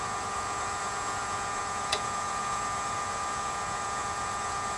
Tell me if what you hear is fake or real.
fake